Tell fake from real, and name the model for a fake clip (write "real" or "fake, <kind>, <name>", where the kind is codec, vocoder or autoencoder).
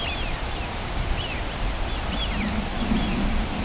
real